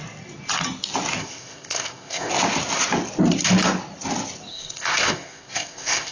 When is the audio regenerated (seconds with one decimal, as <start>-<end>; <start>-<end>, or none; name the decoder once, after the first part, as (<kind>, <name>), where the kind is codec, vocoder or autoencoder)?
1.2-2.3 (codec, ZipCodec); 4.5-6.1